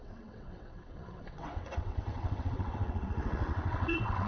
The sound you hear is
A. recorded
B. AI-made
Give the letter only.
B